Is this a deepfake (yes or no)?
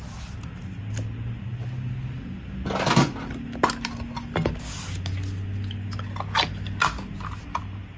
no